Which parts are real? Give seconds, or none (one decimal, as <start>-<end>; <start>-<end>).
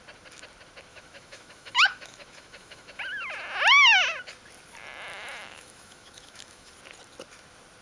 0.0-0.9; 3.0-5.1; 6.7-7.8